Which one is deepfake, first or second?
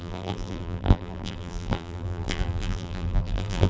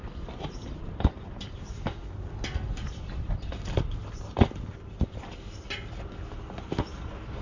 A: first